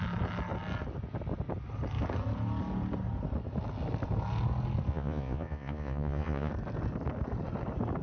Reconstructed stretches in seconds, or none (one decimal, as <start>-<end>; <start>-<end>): 4.9-6.5